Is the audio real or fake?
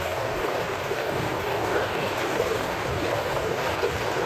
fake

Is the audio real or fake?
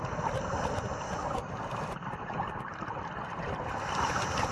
real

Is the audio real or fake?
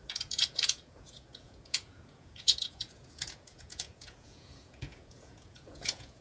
fake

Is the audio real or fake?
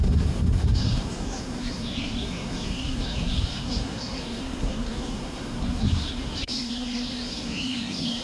fake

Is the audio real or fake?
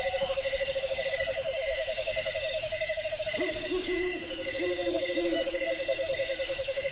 fake